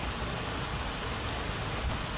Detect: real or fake real